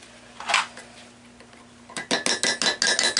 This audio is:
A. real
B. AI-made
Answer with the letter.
A